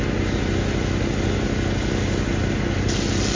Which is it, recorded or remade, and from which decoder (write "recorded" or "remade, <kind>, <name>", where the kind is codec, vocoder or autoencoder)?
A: recorded